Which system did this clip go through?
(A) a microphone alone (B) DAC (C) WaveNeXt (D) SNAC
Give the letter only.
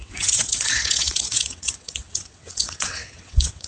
C